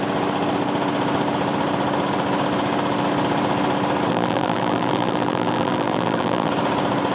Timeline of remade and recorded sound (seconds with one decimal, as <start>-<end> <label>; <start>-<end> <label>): 0.0-4.1 recorded; 4.1-6.5 remade; 6.5-7.1 recorded